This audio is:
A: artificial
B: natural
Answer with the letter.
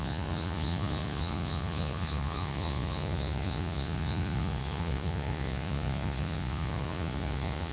A